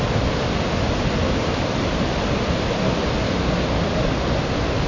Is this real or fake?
real